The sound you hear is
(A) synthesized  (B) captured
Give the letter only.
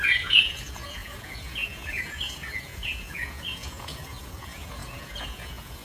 A